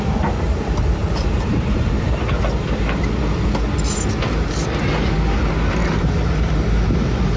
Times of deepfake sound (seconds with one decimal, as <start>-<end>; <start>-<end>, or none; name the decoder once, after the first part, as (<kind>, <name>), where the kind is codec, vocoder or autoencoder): 1.0-1.9 (vocoder, BigVGAN v2); 5.8-6.5

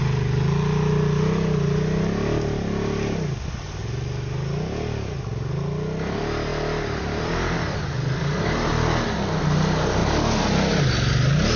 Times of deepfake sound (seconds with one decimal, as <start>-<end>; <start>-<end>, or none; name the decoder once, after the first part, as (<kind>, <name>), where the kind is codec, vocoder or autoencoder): 6.5-8.7 (vocoder, BigVGAN v2)

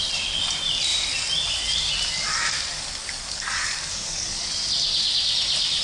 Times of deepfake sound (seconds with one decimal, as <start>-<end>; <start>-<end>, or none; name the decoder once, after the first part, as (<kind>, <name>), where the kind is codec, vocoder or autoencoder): 2.7-4.5 (codec, DAC)

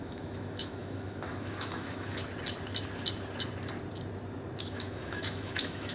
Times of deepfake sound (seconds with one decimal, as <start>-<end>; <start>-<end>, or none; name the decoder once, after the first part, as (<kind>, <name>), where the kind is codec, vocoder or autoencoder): 0.0-2.2 (autoencoder, DAC-VAE); 4.6-5.9

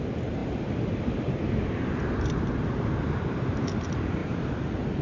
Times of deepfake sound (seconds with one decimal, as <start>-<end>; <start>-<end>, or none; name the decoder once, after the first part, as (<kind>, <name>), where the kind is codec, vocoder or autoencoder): none

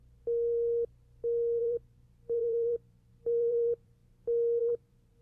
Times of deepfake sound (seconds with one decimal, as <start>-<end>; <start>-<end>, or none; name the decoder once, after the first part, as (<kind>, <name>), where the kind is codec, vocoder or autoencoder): 1.6-4.0 (vocoder, BigVGAN v2); 4.6-5.2